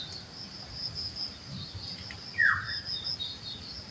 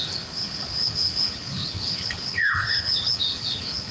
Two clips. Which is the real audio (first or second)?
first